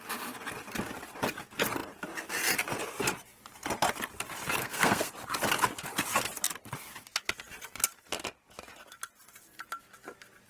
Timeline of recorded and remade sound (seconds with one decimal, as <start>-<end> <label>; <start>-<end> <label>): 0.0-4.6 recorded; 4.6-5.1 remade; 5.1-10.5 recorded